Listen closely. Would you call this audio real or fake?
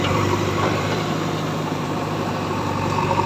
fake